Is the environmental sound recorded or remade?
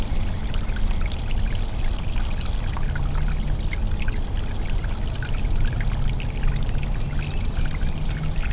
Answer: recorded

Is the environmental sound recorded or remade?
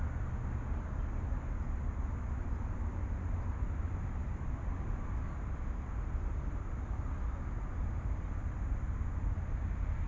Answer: recorded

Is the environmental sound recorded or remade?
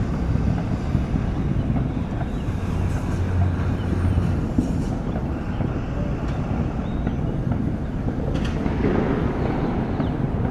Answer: recorded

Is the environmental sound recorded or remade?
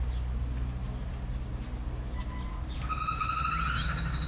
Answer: recorded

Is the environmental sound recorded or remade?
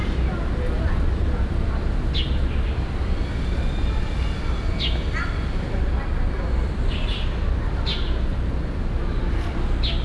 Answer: recorded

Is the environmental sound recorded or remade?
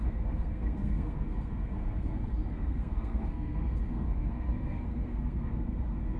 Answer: remade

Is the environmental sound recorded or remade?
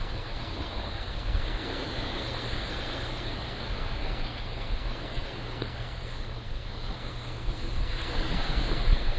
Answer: remade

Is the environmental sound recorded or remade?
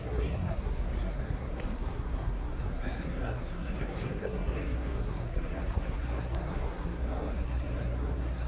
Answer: remade